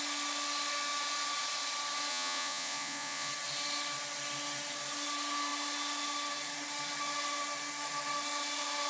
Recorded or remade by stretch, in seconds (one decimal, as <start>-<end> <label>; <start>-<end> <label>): 0.0-2.1 recorded; 2.1-3.3 remade; 3.3-8.9 recorded